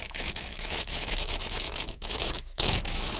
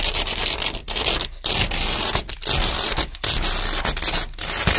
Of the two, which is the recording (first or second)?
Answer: second